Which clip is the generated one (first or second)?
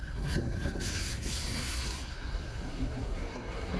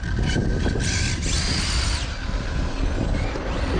first